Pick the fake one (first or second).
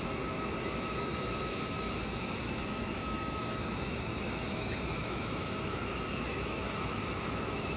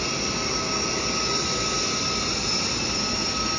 first